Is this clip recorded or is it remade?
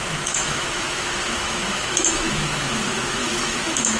remade